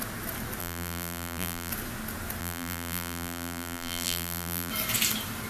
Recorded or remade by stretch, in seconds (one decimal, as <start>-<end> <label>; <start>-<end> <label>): 0.0-0.6 recorded; 0.6-1.7 remade; 1.7-2.4 recorded; 2.4-4.7 remade; 4.7-5.5 recorded